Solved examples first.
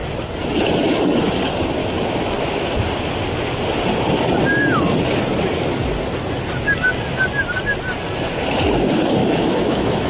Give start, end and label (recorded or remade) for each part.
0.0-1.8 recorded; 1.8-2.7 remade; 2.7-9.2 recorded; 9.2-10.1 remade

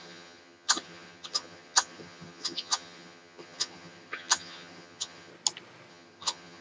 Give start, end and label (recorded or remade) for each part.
0.0-5.3 remade; 5.3-5.9 recorded; 5.9-6.6 remade

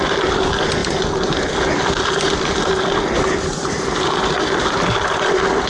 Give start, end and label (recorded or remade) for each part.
0.0-5.7 recorded

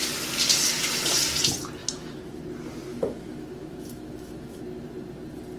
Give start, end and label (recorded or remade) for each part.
0.0-1.8 recorded; 1.8-2.4 remade; 2.4-2.9 recorded; 2.9-4.6 remade; 4.6-5.6 recorded